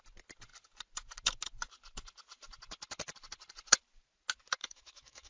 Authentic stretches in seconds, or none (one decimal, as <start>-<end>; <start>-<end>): 0.0-4.6